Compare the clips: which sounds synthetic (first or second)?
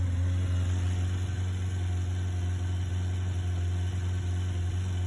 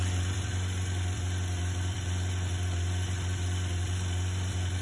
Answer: second